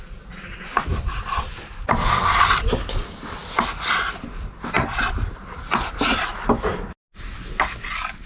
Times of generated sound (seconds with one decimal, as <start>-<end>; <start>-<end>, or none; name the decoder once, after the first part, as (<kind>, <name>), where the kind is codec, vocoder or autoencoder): none